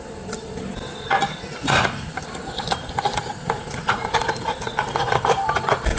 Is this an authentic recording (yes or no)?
no